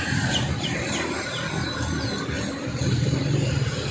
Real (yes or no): yes